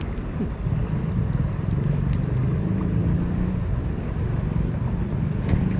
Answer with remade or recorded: recorded